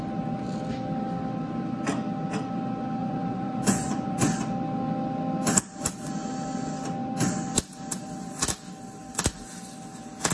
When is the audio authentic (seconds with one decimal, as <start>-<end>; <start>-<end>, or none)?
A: 0.0-3.0; 4.4-10.3